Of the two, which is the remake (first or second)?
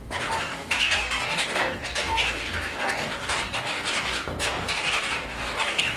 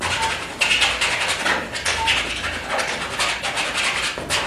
first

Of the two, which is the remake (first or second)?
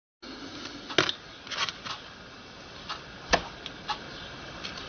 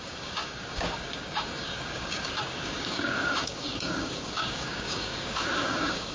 second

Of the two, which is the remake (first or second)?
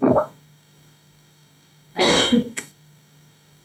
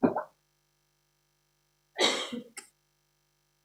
first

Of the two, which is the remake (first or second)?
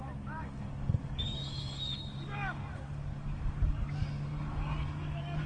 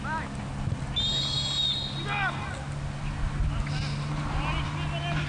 first